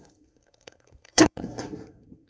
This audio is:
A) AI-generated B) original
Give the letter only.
A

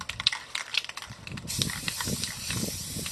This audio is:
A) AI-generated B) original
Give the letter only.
B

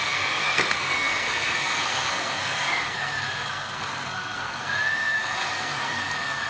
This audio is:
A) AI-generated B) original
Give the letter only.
A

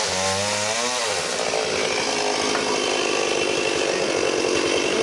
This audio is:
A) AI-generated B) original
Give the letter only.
B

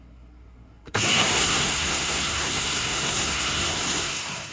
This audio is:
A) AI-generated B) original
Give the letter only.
A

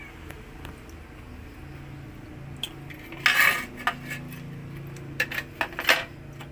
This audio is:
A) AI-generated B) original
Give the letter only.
B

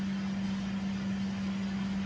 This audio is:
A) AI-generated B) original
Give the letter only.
B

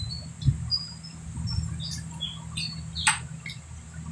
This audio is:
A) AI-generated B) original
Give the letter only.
B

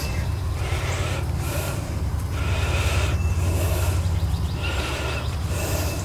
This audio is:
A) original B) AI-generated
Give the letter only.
A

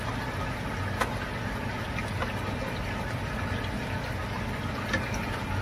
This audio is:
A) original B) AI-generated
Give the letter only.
A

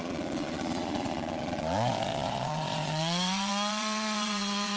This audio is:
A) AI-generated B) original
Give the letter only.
A